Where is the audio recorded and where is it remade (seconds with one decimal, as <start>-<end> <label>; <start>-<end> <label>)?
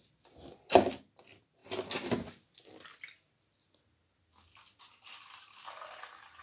0.0-6.4 recorded